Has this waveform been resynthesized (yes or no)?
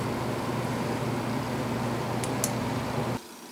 no